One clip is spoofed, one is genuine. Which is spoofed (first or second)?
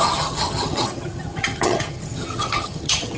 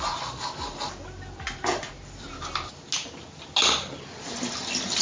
first